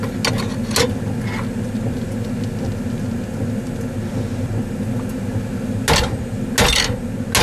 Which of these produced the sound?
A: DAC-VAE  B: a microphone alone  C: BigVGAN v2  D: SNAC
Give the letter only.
B